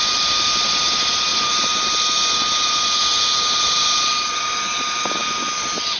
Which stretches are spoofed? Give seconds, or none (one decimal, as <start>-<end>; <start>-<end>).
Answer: none

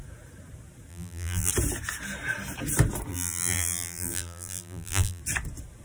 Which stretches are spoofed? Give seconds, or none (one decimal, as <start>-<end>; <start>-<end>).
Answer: 0.9-1.5; 3.1-5.2

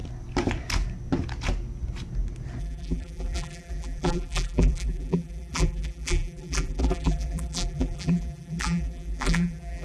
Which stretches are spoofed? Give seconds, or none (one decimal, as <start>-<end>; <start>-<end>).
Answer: 2.6-9.8